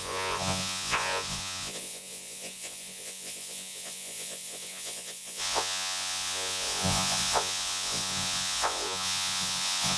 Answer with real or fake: fake